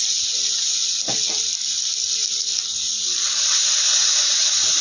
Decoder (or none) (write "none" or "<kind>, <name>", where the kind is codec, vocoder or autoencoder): none